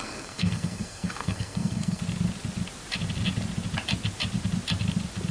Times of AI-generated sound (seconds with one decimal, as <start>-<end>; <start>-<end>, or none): 0.0-2.0